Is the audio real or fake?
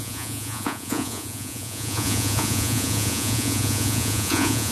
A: fake